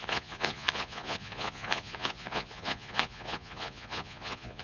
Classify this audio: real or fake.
fake